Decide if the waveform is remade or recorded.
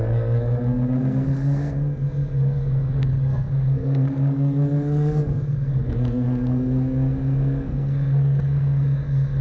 remade